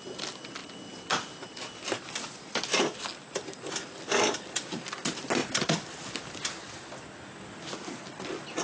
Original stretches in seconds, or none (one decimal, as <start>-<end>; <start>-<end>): 0.0-8.6